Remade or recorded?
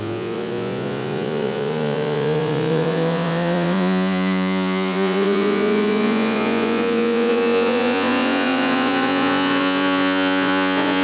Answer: remade